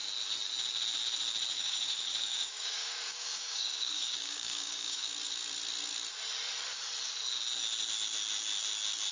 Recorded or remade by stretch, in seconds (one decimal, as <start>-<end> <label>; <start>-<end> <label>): 0.0-1.5 recorded; 1.5-5.0 remade; 5.0-9.1 recorded